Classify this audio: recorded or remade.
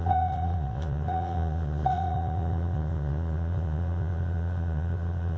remade